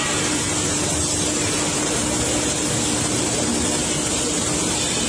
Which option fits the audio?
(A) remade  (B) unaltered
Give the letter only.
B